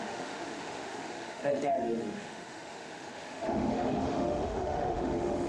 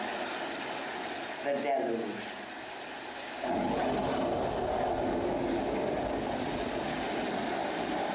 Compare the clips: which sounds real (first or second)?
second